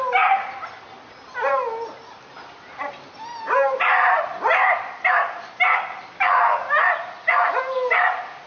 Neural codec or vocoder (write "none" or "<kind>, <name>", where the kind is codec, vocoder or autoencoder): none